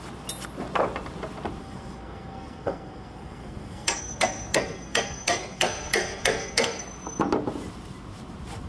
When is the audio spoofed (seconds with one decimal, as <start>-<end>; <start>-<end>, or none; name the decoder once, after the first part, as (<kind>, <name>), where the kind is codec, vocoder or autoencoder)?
1.6-6.8 (codec, SNAC)

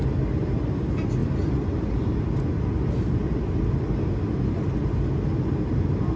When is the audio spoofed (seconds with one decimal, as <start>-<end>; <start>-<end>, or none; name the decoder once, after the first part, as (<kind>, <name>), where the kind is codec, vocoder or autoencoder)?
none

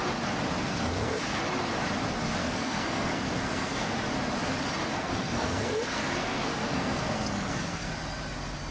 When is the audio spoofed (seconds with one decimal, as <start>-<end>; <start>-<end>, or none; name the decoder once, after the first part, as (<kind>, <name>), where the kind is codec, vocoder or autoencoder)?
0.6-1.4 (codec, SNAC); 2.4-3.9; 5.0-7.9

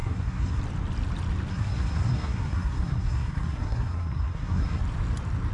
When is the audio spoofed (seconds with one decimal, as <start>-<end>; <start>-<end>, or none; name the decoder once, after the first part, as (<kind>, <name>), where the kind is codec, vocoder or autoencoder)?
0.0-0.6 (codec, SNAC); 1.5-4.8